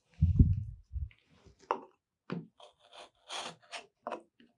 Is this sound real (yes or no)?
yes